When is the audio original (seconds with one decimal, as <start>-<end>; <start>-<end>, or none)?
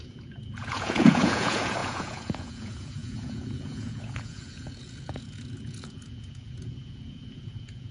none